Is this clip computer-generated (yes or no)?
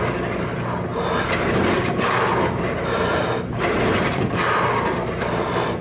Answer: no